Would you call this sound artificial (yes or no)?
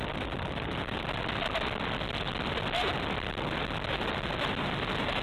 no